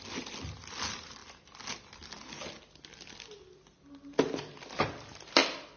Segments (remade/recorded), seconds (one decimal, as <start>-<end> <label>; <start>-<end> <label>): 0.0-5.8 recorded